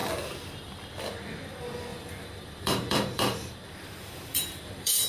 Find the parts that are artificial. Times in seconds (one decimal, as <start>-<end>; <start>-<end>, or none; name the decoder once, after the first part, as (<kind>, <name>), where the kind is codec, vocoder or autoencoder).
1.9-5.1 (vocoder, BigVGAN v2)